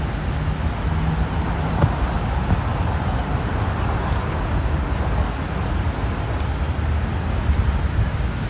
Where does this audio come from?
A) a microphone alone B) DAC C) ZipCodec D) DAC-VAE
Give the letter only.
A